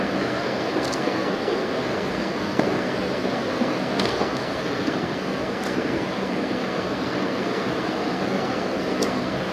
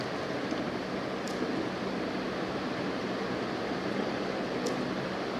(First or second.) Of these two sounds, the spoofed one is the first